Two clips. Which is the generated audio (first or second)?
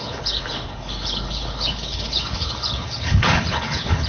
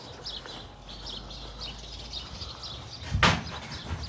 first